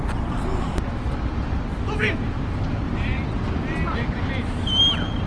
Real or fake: real